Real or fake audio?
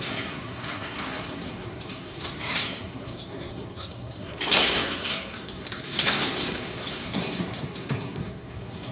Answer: fake